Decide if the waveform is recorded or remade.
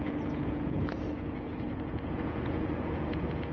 remade